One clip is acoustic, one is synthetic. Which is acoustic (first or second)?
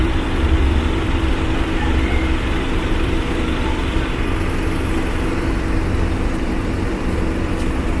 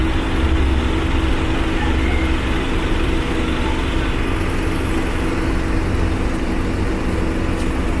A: second